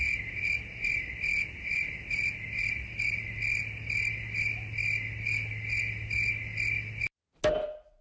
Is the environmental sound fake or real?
real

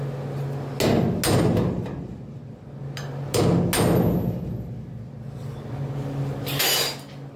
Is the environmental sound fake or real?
real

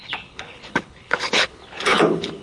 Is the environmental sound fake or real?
fake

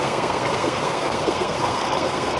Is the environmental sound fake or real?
fake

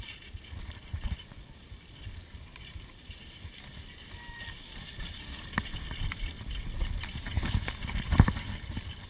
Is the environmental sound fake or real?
real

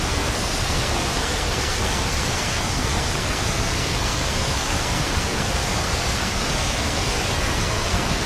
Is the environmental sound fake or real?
fake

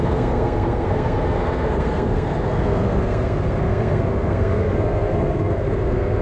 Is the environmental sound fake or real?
fake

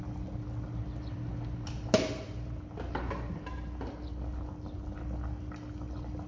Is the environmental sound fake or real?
real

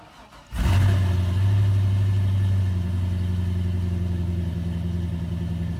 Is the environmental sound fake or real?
real